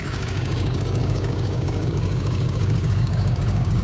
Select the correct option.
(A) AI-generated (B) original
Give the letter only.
A